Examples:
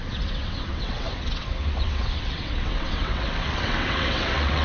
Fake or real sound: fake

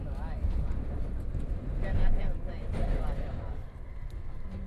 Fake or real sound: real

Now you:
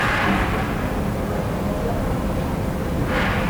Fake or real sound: real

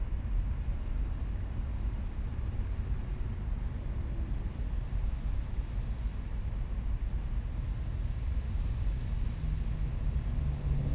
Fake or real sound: real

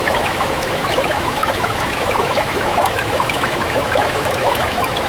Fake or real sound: fake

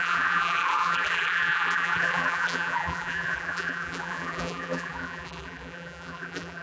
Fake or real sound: fake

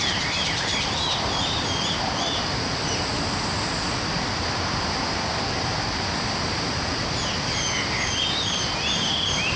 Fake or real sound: real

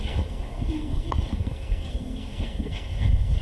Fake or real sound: fake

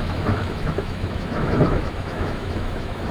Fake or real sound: fake